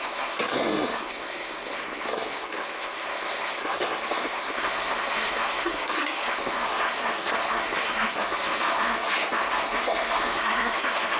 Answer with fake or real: fake